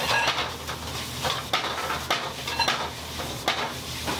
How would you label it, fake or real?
real